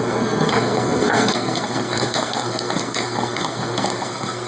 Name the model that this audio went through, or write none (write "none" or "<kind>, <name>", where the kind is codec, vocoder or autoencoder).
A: codec, SNAC